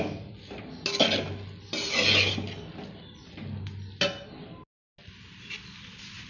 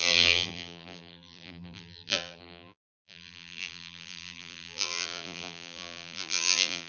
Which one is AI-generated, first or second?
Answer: second